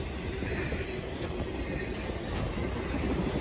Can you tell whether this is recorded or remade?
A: recorded